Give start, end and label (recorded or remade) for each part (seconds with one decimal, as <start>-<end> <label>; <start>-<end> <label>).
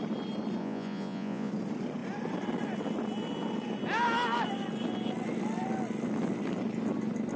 0.0-0.6 recorded; 0.6-1.5 remade; 1.5-7.4 recorded